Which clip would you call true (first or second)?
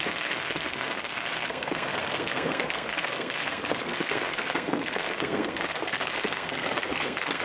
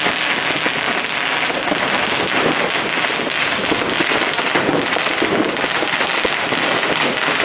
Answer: second